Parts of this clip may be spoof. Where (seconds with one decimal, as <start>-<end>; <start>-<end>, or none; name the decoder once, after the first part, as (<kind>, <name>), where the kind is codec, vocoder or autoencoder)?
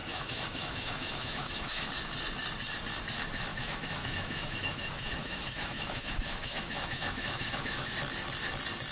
0.0-1.9 (autoencoder, DAC-VAE); 3.5-7.9